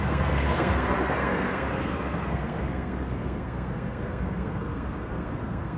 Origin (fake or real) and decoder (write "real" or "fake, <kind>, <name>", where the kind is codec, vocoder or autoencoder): fake, codec, SNAC